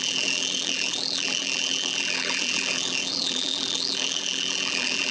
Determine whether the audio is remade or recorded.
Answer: remade